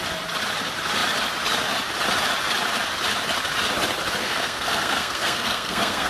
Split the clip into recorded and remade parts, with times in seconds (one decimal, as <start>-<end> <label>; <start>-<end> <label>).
0.0-4.2 recorded; 4.2-6.1 remade